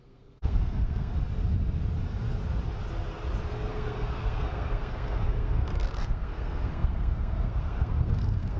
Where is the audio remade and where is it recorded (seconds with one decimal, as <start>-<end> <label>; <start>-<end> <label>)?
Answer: 0.0-1.1 remade; 1.1-3.7 recorded; 3.7-8.6 remade